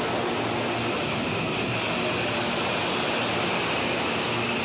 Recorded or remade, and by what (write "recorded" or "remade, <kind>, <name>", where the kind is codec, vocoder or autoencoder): recorded